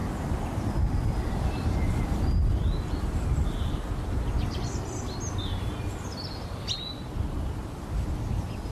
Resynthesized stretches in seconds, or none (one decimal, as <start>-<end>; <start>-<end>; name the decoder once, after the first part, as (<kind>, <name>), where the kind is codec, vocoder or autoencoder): none